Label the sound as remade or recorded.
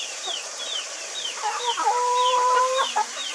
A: remade